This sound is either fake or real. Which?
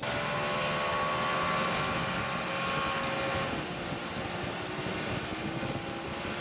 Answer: real